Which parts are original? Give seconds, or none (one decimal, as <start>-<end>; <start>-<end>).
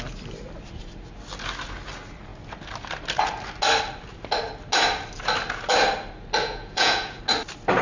0.0-6.4; 7.2-7.8